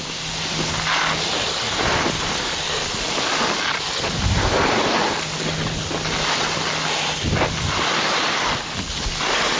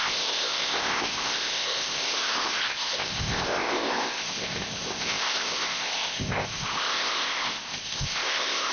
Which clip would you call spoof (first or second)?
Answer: second